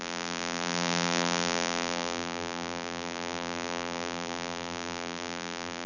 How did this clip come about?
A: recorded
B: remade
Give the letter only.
B